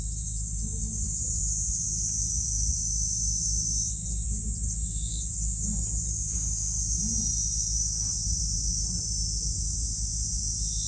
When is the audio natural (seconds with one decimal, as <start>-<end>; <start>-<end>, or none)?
0.0-10.9